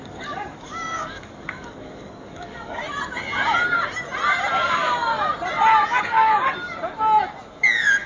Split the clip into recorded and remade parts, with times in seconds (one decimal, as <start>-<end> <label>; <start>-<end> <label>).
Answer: 0.0-2.8 remade; 2.8-4.5 recorded; 4.5-5.1 remade; 5.1-6.0 recorded; 6.0-6.4 remade; 6.4-8.1 recorded